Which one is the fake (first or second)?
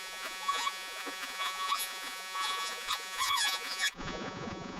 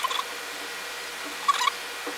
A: first